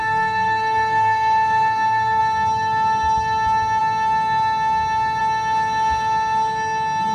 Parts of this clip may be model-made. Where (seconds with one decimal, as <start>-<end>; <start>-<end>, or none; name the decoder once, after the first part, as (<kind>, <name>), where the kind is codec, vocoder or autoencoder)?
0.0-2.2 (codec, SNAC)